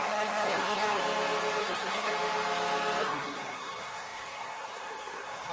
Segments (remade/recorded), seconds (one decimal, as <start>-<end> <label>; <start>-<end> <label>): 0.0-1.0 remade; 1.0-1.6 recorded; 1.6-2.1 remade; 2.1-3.0 recorded; 3.0-5.5 remade